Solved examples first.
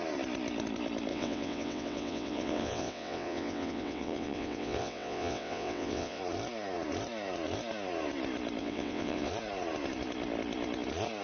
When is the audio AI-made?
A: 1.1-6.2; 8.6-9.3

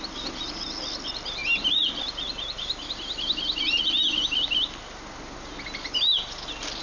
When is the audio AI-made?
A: none

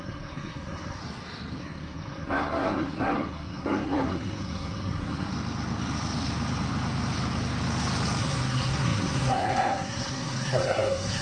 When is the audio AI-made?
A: 0.0-1.0; 1.6-5.3; 8.2-11.2